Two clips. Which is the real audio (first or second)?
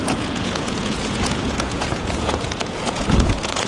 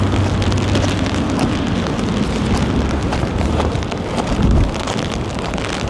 second